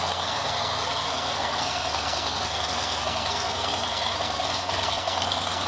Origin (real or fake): fake